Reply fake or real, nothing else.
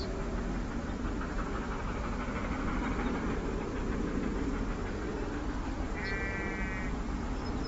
real